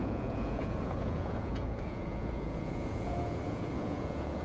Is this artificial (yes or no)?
yes